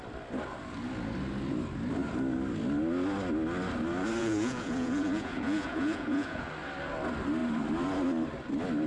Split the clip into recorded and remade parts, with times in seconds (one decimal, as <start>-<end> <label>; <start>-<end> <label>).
0.0-4.2 recorded; 4.2-6.5 remade; 6.5-8.9 recorded